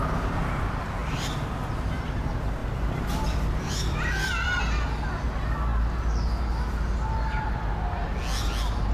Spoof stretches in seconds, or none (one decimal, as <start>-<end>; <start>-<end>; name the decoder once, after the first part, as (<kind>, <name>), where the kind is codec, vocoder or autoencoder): 1.0-1.9 (vocoder, BigVGAN v2); 2.6-4.6